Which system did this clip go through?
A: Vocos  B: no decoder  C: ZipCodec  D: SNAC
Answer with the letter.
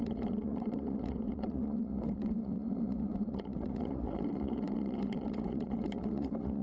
A